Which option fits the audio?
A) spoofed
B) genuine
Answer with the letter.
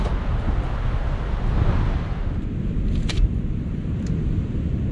B